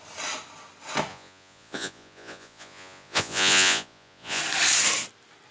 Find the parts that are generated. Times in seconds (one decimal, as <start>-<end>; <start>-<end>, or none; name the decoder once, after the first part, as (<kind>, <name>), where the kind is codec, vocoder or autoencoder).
1.1-4.4 (vocoder, Vocos)